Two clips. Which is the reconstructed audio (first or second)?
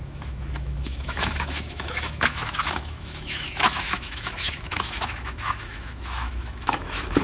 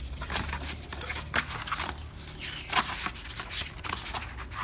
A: first